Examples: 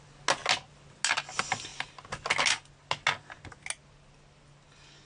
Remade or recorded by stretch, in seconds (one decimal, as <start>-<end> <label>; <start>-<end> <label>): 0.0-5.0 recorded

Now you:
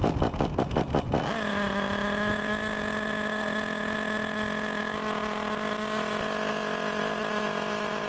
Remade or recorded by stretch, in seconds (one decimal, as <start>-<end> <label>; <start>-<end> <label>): 0.0-8.1 recorded

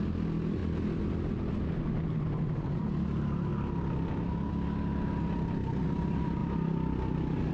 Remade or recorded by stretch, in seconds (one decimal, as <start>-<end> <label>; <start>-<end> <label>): 0.0-7.5 recorded

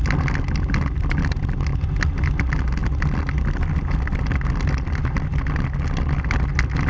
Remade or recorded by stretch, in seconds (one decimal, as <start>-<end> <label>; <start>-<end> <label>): 0.0-6.9 recorded

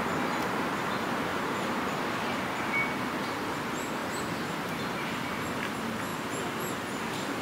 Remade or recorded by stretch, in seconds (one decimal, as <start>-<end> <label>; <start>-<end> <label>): 0.0-4.0 recorded; 4.0-4.8 remade; 4.8-7.4 recorded

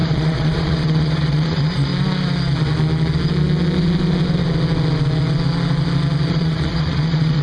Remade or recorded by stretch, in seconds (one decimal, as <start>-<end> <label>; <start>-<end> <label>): 0.0-1.9 remade; 1.9-6.3 recorded; 6.3-7.4 remade

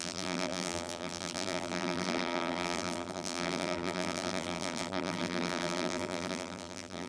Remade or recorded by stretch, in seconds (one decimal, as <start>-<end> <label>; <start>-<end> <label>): 0.0-7.1 remade

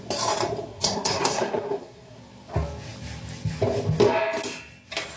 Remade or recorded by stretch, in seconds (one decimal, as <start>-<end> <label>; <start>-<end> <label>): 0.0-0.7 recorded; 0.7-2.2 remade; 2.2-5.2 recorded